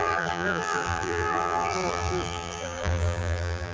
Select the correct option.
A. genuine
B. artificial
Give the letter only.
B